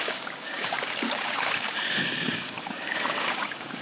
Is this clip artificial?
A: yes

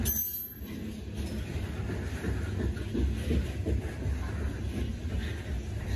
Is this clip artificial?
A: no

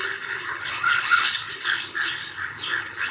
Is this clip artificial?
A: yes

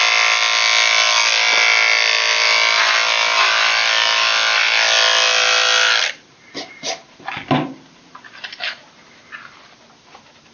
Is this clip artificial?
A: no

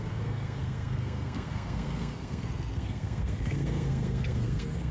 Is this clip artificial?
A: yes